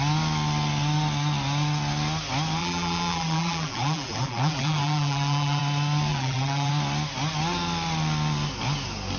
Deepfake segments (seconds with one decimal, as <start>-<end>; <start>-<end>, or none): 2.6-5.6; 6.1-6.7